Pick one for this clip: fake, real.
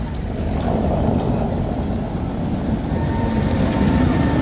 real